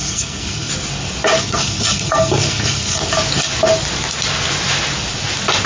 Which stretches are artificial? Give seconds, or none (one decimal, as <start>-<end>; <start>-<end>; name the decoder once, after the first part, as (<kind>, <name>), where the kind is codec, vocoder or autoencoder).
0.0-0.7 (codec, SNAC); 1.4-3.0